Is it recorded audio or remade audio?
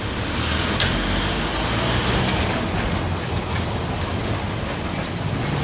recorded